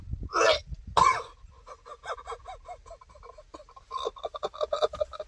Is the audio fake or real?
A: real